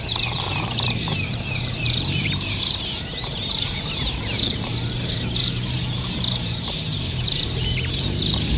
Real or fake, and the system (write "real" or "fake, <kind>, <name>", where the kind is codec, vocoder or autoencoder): fake, vocoder, BigVGAN v2